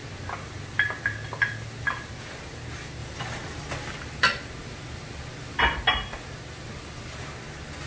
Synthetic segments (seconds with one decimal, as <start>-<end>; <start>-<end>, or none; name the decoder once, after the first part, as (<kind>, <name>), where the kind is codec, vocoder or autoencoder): none